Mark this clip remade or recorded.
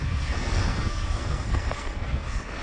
remade